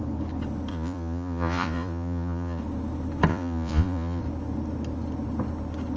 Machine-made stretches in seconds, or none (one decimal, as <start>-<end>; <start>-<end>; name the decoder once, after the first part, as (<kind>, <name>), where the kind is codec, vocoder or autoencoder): 0.7-2.6 (vocoder, Vocos); 3.3-4.2